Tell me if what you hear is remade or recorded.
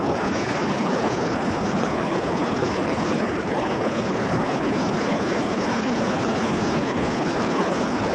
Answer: remade